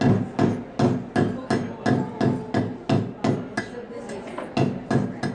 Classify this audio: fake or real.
real